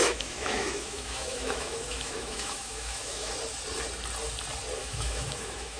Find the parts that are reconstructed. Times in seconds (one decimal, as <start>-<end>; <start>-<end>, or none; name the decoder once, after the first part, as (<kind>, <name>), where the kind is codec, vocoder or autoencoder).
0.0-3.3 (autoencoder, DAC-VAE); 4.8-5.8